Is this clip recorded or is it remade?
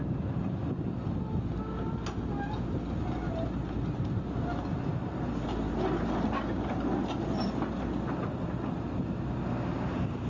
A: recorded